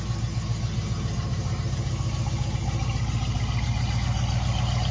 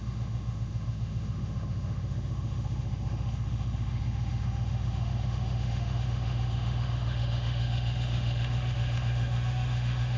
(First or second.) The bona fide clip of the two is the first